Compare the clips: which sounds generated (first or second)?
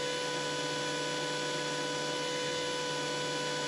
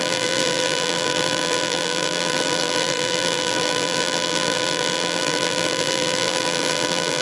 second